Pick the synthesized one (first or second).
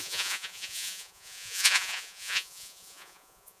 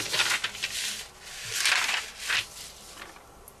first